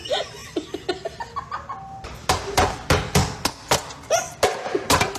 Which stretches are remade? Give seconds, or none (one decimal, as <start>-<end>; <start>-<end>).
none